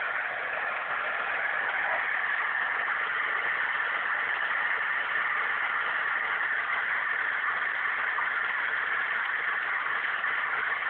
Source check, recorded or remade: recorded